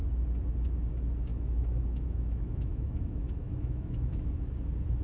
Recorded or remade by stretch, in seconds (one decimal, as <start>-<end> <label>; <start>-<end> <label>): 0.0-1.3 recorded; 1.3-4.3 remade; 4.3-5.0 recorded